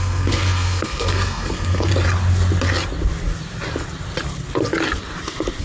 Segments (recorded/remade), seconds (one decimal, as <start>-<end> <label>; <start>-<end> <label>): 0.0-1.9 remade; 1.9-5.6 recorded